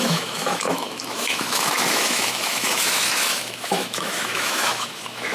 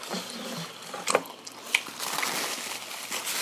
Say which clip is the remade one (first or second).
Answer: first